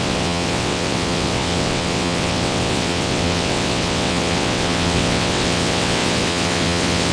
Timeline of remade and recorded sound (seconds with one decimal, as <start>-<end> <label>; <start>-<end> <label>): 0.0-7.1 remade